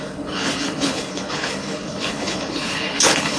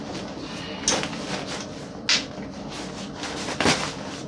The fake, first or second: first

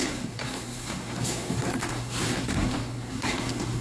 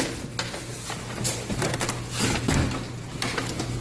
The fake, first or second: first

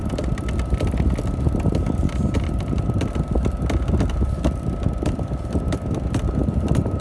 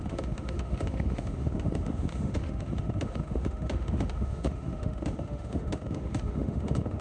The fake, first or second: second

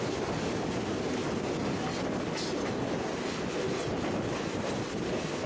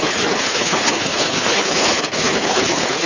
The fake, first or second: second